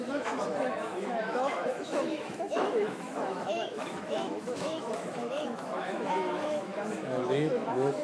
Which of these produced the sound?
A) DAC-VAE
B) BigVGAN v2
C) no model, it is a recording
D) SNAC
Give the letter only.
A